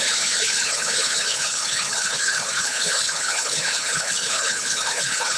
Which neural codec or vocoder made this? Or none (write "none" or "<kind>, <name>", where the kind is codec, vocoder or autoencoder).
codec, HILCodec